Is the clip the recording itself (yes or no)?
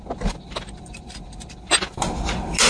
yes